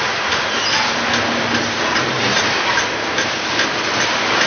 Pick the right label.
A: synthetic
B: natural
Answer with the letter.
B